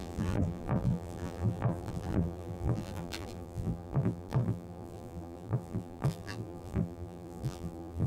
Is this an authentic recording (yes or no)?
no